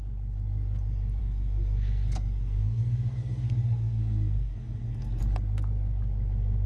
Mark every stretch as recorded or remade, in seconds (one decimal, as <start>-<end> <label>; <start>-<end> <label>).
0.0-1.2 recorded; 1.2-5.2 remade; 5.2-6.7 recorded